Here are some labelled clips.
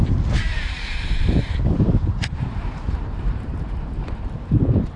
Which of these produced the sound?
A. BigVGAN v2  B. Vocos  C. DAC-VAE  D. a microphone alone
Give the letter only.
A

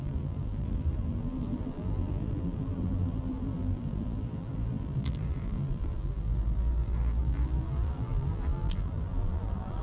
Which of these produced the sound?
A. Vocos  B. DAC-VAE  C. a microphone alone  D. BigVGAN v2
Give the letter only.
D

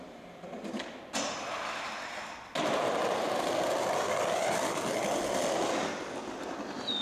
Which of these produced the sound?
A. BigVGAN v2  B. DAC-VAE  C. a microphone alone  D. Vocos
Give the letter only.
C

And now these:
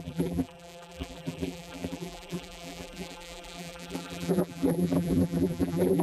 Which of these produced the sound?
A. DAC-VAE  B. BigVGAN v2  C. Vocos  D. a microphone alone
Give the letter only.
B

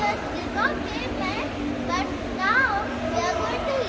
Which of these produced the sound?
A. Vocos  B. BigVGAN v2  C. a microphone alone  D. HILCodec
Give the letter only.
C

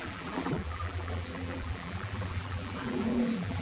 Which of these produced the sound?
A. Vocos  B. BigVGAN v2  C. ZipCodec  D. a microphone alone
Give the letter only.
B